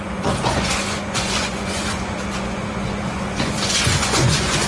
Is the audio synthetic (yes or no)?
yes